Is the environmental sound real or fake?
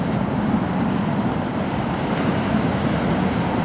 real